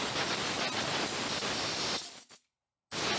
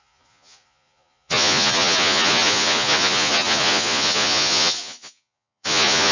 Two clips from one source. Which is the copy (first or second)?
second